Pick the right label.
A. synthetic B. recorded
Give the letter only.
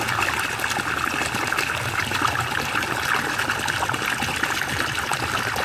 B